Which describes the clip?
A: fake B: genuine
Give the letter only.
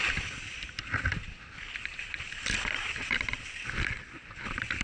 B